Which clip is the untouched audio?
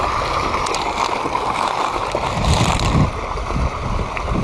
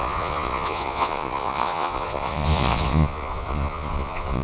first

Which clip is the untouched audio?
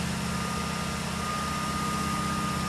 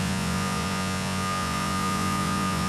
first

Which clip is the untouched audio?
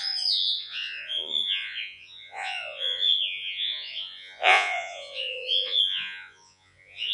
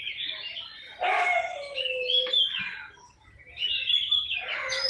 second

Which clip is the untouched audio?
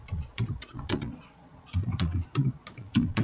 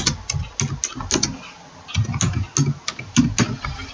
second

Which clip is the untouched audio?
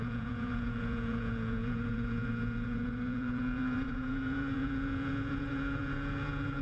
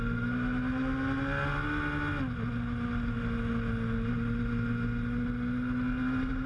second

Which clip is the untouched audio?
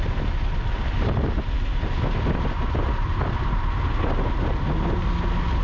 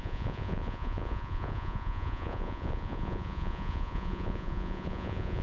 first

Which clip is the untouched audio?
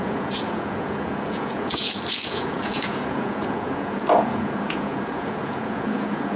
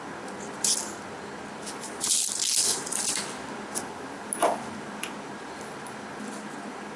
second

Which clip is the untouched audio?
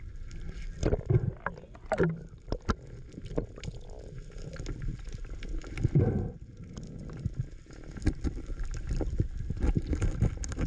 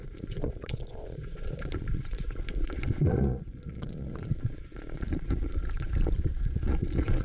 first